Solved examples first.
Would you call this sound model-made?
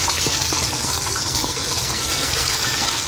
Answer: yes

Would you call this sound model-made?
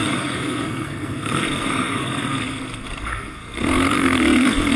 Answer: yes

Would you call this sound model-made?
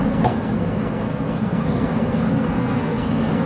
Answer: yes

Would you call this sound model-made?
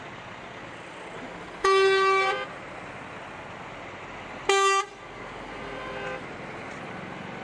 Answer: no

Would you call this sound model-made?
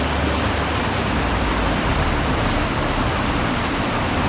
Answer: no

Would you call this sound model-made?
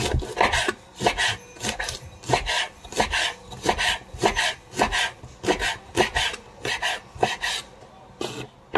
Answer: no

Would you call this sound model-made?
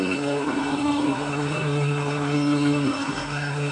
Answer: yes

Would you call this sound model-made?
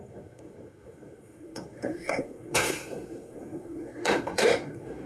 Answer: yes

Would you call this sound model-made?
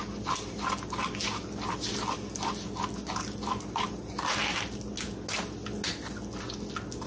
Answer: no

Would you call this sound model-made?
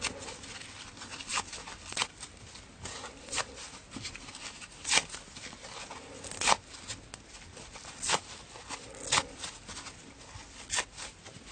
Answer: no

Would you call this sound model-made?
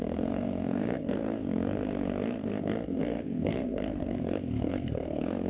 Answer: yes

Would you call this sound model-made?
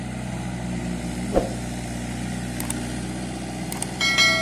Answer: no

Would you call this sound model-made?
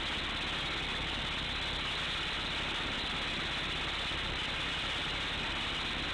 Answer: no